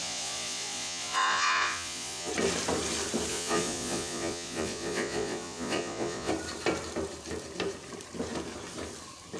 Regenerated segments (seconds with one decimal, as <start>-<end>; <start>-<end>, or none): 0.0-2.3; 3.3-6.3